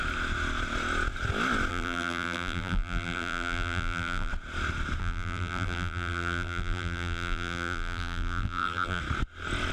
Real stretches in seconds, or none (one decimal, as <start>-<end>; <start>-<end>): 0.0-1.7; 4.3-5.0; 9.0-9.7